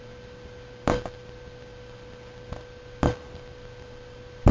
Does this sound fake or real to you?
real